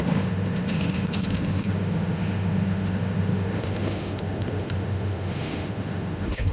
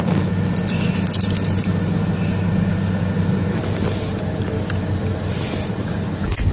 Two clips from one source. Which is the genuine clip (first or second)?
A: second